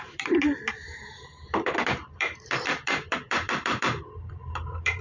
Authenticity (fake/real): fake